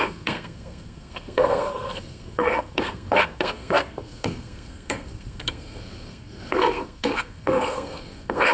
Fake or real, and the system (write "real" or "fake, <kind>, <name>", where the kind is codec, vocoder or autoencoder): fake, codec, SNAC